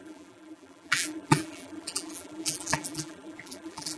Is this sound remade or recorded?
remade